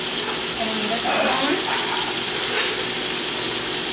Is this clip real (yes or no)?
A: yes